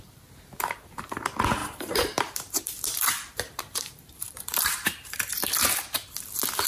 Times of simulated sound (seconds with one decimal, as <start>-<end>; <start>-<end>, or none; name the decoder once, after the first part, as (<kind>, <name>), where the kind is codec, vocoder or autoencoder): 1.6-5.2 (vocoder, BigVGAN v2)